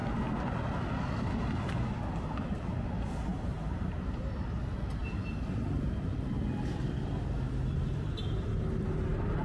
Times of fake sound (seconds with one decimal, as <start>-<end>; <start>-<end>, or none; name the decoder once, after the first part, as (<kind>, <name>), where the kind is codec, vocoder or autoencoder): 3.3-4.6 (vocoder, BigVGAN v2)